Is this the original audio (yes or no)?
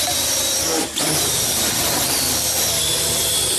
yes